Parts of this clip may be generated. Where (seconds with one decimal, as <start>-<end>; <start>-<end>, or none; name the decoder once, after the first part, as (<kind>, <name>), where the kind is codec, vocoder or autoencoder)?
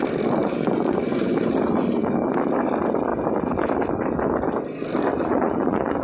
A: 0.4-1.5 (vocoder, Vocos); 5.1-6.0